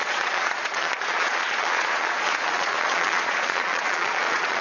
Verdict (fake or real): fake